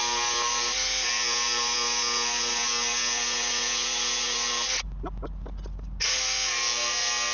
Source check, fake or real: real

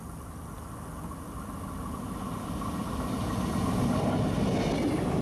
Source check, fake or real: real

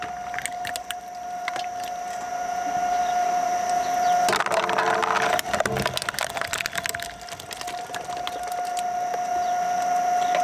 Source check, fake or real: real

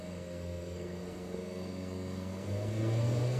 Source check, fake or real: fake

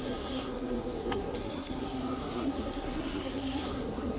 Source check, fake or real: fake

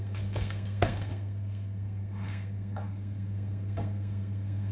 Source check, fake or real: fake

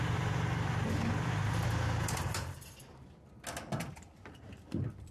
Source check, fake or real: real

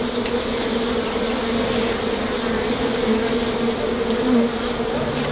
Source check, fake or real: real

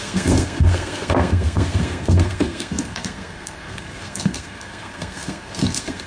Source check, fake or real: fake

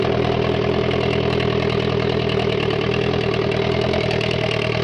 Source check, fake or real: real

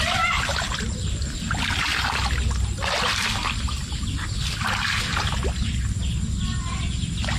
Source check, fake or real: real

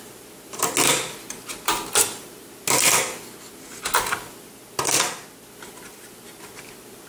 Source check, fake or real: real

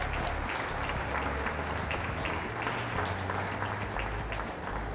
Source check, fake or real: real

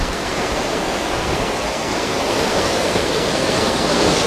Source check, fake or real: fake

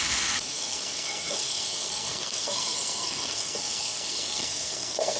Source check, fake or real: fake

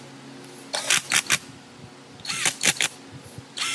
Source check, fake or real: real